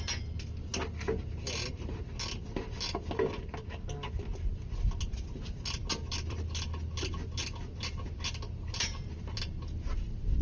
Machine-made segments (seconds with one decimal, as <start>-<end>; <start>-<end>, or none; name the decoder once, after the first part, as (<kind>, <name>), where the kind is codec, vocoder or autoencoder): none